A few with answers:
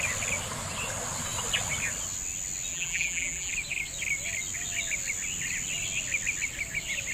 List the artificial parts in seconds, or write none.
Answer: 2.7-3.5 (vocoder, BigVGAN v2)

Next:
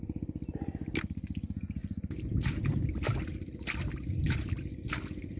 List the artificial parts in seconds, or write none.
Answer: 1.8-2.8 (vocoder, BigVGAN v2)

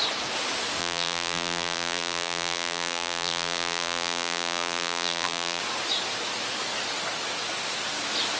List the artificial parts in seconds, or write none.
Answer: 0.8-5.6 (vocoder, BigVGAN v2)

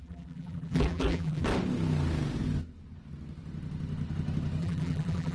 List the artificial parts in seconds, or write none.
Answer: 0.0-1.4 (vocoder, BigVGAN v2); 4.6-5.3

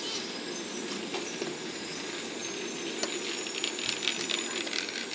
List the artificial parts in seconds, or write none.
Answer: 1.1-1.9 (vocoder, BigVGAN v2)